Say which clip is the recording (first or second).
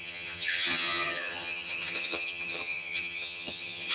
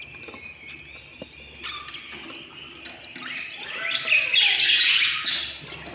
second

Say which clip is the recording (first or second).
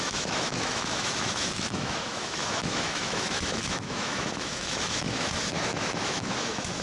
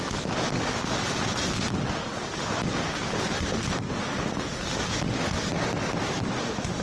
second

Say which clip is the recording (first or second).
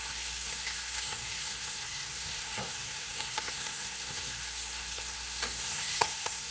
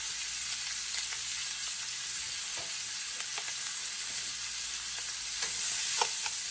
second